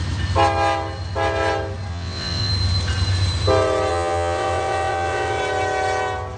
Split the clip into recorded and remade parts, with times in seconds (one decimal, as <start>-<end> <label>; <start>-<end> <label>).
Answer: 0.0-1.9 recorded; 1.9-2.5 remade; 2.5-3.9 recorded; 3.9-5.4 remade; 5.4-6.4 recorded